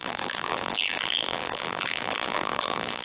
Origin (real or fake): fake